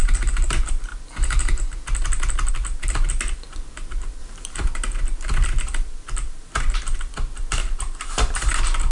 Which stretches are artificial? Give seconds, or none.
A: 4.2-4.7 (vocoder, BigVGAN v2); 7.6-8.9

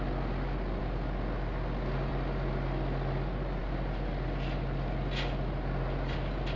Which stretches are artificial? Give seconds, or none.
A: none

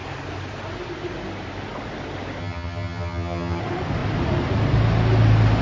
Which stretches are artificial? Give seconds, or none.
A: 2.4-3.6 (vocoder, HiFi-GAN)

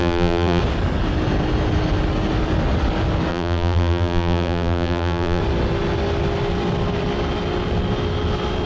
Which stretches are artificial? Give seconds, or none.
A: 0.0-0.6 (vocoder, BigVGAN v2); 3.3-5.4

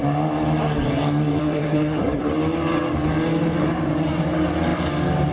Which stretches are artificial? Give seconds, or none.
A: 1.4-2.2 (codec, SNAC)

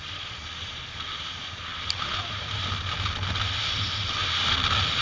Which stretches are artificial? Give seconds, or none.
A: none